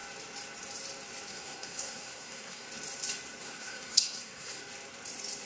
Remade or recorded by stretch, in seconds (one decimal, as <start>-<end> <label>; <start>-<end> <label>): 0.0-1.3 recorded; 1.3-2.7 remade; 2.7-3.4 recorded; 3.4-4.6 remade; 4.6-5.5 recorded